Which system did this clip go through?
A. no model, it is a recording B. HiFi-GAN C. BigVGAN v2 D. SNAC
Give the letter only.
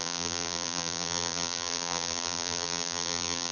C